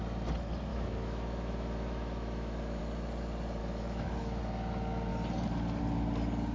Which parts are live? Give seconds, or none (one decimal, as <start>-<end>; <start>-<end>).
0.0-0.7; 2.8-3.6; 4.4-6.5